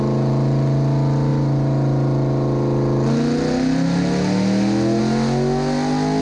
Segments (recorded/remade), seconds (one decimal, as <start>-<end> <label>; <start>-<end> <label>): 0.0-6.2 recorded